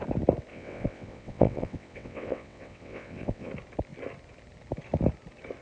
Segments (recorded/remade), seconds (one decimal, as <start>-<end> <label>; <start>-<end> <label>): 0.0-0.5 recorded; 0.5-3.5 remade; 3.5-5.6 recorded

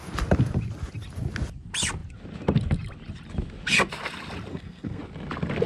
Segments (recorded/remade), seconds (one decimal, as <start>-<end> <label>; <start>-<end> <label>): 0.0-4.5 recorded; 4.5-5.0 remade; 5.0-5.7 recorded